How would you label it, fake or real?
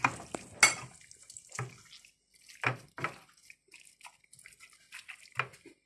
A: real